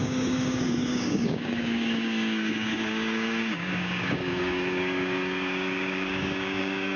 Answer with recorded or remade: remade